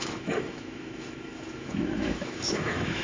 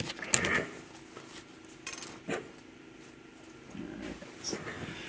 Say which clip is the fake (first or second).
first